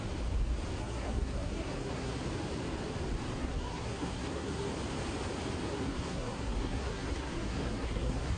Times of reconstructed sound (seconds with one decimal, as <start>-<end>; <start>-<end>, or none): 0.8-2.2; 3.4-4.7; 5.6-8.4